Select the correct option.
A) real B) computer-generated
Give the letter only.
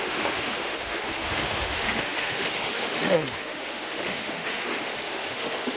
B